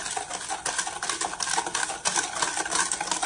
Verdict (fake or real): real